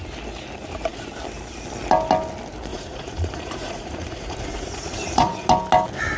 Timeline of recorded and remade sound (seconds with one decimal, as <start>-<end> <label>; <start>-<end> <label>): 0.0-2.7 recorded; 2.7-5.5 remade; 5.5-6.2 recorded

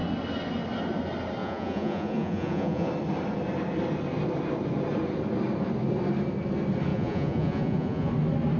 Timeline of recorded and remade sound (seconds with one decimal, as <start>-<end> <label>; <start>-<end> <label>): 0.0-1.4 recorded; 1.4-2.9 remade; 2.9-6.9 recorded; 6.9-8.1 remade; 8.1-8.6 recorded

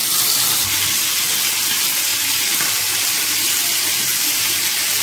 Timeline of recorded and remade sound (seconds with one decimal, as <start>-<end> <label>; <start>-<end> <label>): 0.0-4.1 recorded; 4.1-5.0 remade

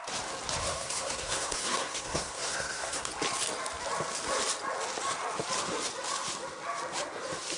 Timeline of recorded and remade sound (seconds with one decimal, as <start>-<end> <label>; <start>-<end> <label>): 0.0-0.6 recorded; 0.6-3.1 remade; 3.1-7.6 recorded

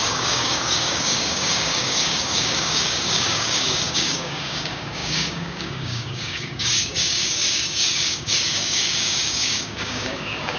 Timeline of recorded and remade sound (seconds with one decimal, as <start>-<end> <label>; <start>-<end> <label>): 0.0-10.6 remade